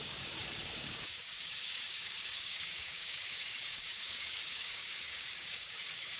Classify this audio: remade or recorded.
remade